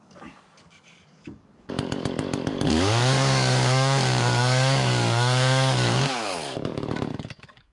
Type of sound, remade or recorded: remade